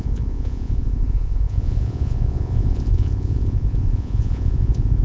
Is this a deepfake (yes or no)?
yes